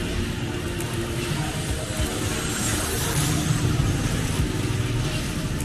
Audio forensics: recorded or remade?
recorded